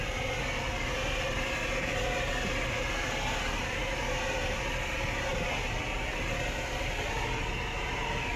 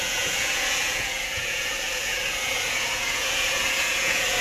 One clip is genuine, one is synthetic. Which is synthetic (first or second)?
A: second